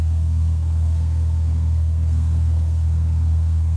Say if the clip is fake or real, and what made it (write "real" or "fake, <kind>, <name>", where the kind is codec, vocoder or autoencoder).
fake, codec, SNAC